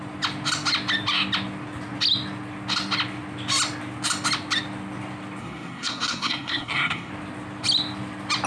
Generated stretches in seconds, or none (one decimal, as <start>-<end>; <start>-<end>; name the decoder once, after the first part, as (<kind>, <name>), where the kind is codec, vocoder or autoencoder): 5.4-7.1 (codec, SNAC)